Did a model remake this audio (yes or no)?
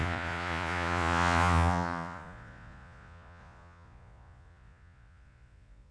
yes